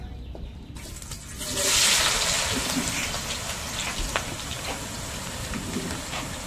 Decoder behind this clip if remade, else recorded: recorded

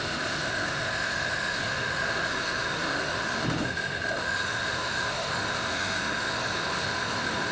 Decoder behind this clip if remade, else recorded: remade, autoencoder, DAC-VAE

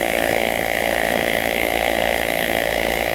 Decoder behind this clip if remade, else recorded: remade, codec, SNAC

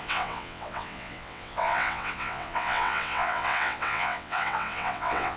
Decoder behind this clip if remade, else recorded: remade, vocoder, WaveNeXt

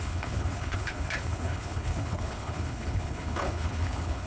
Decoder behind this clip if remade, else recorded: remade, codec, HILCodec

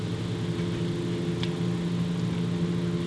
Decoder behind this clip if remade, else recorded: recorded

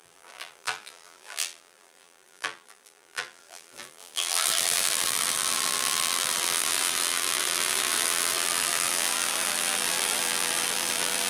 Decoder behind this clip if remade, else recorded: remade, vocoder, BigVGAN v2